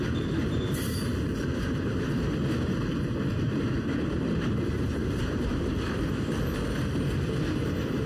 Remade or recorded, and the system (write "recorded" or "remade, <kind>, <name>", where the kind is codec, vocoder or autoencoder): remade, vocoder, BigVGAN v2